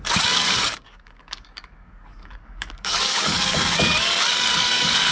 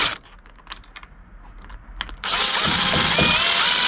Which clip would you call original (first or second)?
second